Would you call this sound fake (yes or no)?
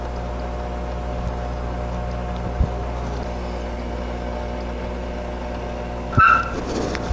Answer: no